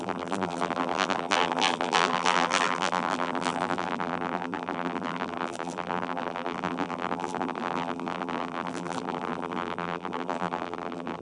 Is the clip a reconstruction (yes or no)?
yes